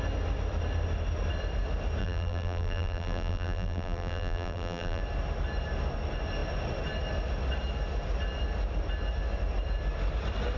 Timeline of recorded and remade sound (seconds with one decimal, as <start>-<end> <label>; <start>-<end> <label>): 0.0-2.0 recorded; 2.0-5.0 remade; 5.0-10.6 recorded